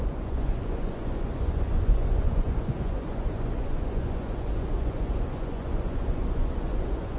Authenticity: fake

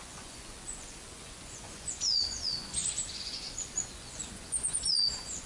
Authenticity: fake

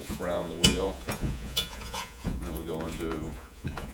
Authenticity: fake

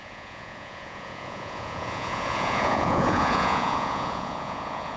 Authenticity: fake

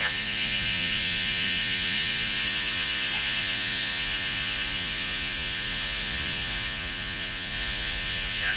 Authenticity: fake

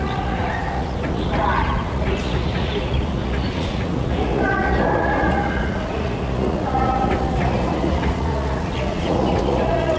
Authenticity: fake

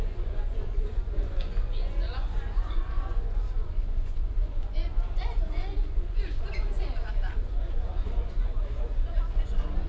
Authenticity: fake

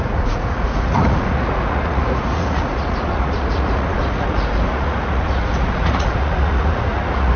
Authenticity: fake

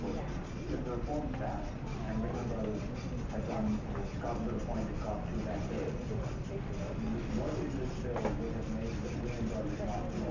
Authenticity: real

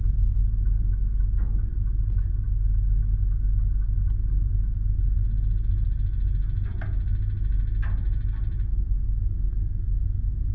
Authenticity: real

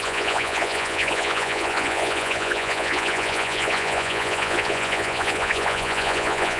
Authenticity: fake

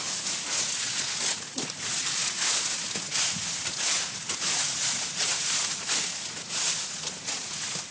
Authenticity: fake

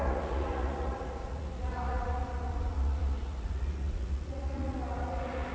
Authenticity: fake